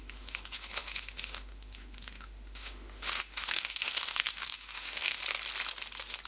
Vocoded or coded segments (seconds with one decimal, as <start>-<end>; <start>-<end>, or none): 0.0-5.2